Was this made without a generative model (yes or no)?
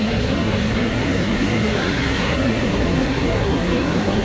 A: no